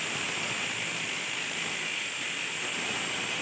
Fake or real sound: real